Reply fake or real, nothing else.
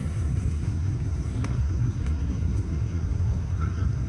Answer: fake